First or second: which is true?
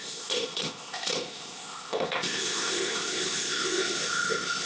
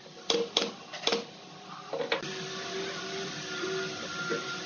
second